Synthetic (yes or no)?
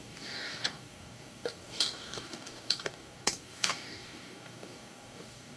yes